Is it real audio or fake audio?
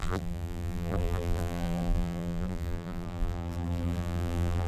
fake